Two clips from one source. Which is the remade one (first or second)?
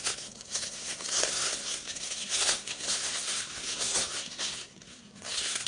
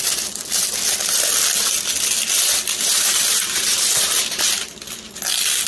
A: first